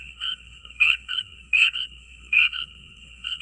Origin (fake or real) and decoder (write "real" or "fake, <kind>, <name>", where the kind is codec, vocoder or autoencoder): fake, codec, SNAC